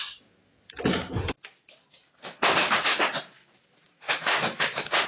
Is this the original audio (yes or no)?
yes